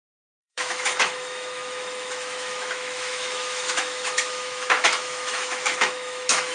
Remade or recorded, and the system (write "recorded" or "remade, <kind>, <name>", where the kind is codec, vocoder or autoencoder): remade, autoencoder, DAC-VAE